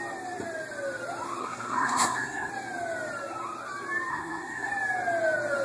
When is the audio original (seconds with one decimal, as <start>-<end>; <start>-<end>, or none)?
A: 0.0-1.4; 2.5-4.1; 4.7-5.6